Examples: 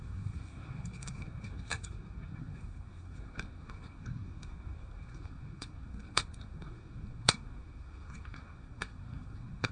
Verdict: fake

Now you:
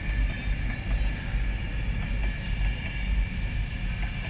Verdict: real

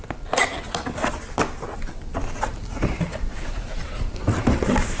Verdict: real